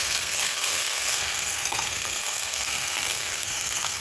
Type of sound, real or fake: fake